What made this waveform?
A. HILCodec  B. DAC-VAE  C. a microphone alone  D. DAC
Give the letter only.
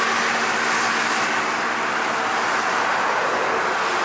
C